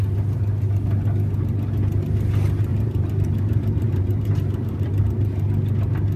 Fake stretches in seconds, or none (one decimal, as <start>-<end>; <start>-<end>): 2.7-5.0